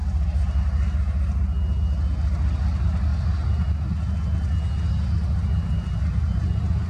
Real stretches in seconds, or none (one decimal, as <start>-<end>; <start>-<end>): 0.0-6.9